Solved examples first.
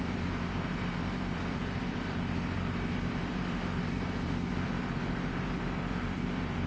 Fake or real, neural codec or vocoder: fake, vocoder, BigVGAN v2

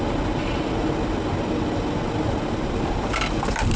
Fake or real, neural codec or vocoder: real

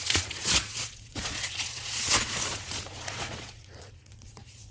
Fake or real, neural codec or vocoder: fake, vocoder, Vocos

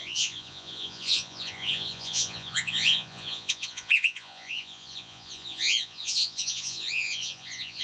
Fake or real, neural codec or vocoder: fake, vocoder, Vocos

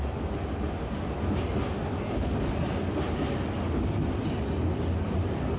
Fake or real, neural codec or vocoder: real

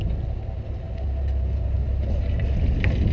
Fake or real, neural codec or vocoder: real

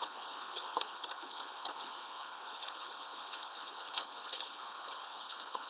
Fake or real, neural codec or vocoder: fake, codec, HILCodec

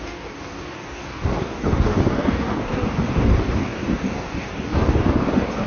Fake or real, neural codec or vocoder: fake, codec, DAC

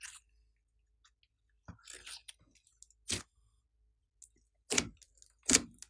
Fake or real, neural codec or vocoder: real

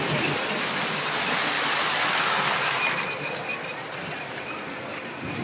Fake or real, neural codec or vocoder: real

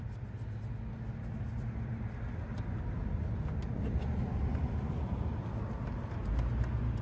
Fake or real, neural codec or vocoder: real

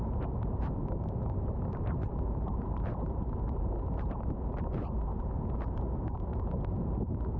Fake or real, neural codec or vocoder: fake, vocoder, BigVGAN v2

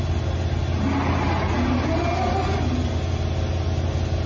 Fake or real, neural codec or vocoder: real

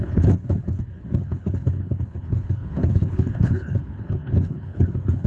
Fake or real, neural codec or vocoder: fake, codec, HILCodec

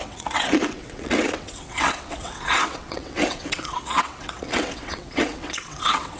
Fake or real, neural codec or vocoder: fake, vocoder, WaveNeXt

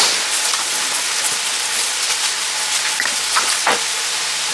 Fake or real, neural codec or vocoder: real